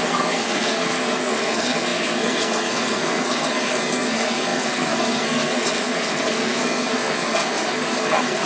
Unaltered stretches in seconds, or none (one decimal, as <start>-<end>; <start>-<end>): none